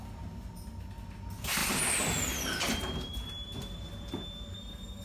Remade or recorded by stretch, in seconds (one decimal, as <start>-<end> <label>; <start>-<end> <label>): 0.0-5.0 recorded